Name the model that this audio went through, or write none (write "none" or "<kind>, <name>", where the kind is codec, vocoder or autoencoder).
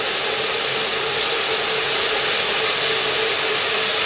none